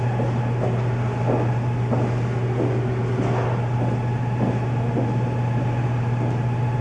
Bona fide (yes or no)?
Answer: yes